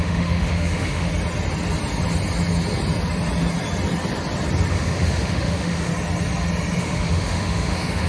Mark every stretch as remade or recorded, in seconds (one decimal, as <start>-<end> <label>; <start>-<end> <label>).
0.0-1.1 remade; 1.1-4.7 recorded; 4.7-5.9 remade; 5.9-6.8 recorded; 6.8-8.1 remade